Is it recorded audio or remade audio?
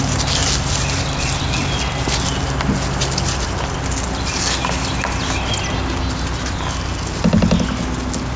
recorded